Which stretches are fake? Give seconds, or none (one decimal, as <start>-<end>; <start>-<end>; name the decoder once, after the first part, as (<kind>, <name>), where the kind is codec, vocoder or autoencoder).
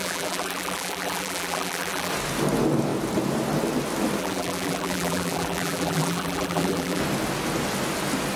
0.0-2.1 (vocoder, BigVGAN v2); 4.2-7.0